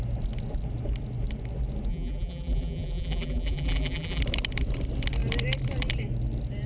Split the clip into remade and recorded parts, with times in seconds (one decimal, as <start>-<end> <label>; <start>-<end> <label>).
0.0-1.9 recorded; 1.9-4.2 remade; 4.2-6.7 recorded